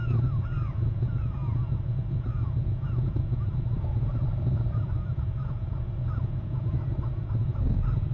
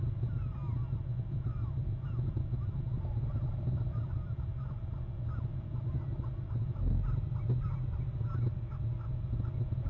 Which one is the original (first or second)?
second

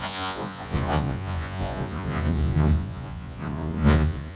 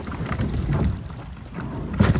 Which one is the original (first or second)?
second